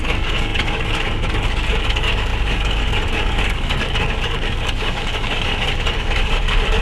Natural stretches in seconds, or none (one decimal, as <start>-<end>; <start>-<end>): none